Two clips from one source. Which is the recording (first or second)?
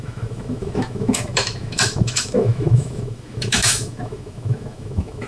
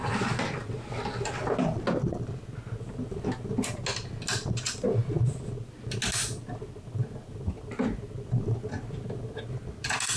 second